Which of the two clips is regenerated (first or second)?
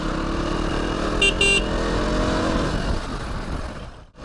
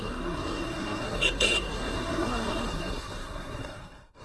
second